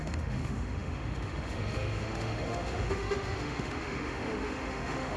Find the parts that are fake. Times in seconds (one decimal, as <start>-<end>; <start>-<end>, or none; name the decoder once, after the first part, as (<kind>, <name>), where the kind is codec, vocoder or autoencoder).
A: 0.0-5.2 (autoencoder, DAC-VAE)